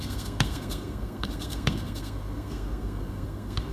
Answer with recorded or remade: remade